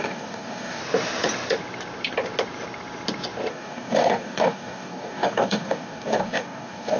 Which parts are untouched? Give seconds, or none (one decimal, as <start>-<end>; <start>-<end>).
0.8-3.5